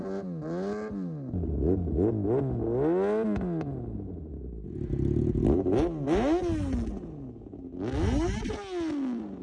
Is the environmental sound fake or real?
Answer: real